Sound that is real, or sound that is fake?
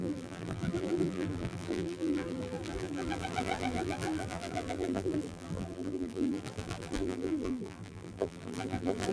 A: fake